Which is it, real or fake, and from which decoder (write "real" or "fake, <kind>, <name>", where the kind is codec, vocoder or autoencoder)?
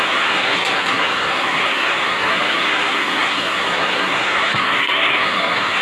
fake, codec, SNAC